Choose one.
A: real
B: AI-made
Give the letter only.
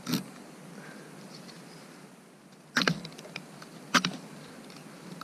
A